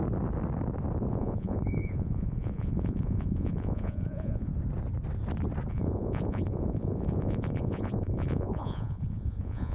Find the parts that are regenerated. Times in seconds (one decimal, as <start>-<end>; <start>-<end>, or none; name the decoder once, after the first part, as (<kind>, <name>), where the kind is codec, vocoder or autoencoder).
1.1-4.5 (vocoder, Vocos); 5.7-9.7